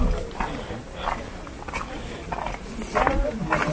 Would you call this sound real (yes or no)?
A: yes